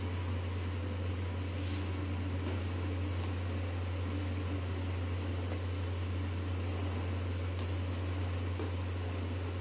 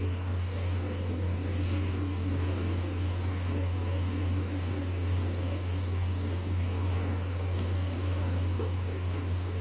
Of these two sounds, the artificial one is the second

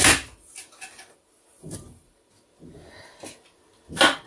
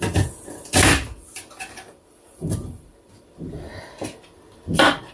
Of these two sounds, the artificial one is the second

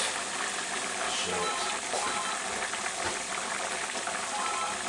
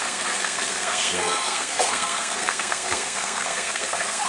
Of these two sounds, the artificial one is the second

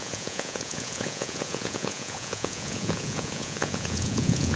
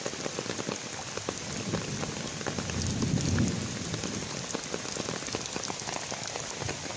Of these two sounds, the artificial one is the first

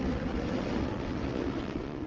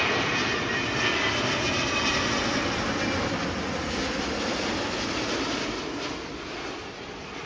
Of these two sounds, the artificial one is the first